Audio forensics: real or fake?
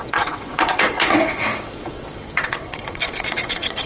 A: fake